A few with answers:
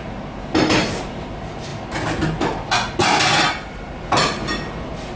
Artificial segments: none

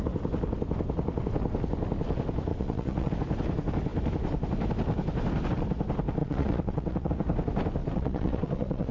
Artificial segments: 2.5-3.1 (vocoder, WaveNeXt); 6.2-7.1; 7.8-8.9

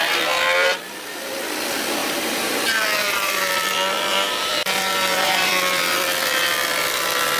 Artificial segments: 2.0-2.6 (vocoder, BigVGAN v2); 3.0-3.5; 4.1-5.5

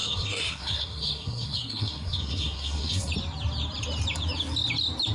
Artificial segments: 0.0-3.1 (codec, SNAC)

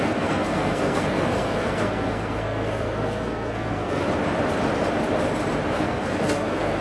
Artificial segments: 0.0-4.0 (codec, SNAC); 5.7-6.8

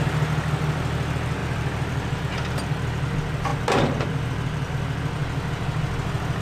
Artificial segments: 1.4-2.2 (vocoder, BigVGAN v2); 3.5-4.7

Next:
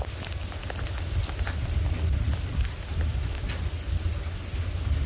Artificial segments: none